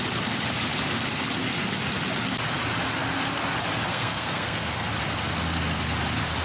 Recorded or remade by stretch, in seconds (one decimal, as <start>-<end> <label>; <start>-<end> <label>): 0.0-3.9 recorded; 3.9-4.9 remade; 4.9-6.4 recorded